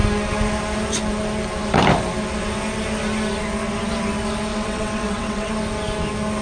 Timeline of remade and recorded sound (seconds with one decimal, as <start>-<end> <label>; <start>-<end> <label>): 0.0-4.5 recorded; 4.5-5.5 remade; 5.5-6.4 recorded